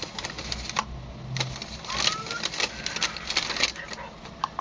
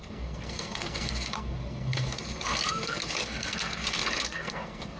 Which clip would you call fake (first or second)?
second